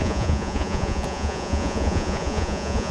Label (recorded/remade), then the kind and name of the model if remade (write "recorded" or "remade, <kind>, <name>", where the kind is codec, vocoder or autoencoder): remade, vocoder, Vocos